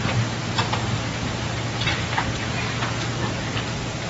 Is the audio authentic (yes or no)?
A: yes